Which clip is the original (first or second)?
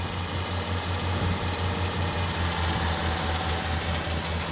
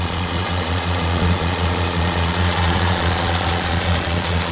first